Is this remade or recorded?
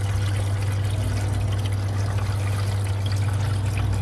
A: recorded